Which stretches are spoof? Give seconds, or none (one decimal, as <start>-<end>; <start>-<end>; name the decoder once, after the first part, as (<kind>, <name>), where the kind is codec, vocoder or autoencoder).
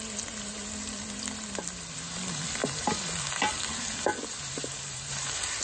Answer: none